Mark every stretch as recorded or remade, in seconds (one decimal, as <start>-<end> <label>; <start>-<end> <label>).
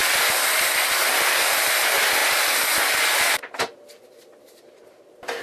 0.0-5.4 recorded